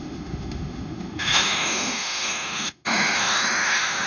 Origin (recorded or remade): remade